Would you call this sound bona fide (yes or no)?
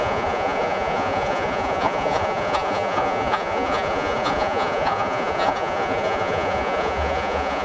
no